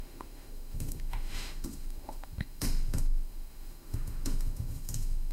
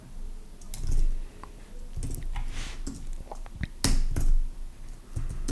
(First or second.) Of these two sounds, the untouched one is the second